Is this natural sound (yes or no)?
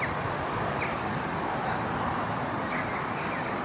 yes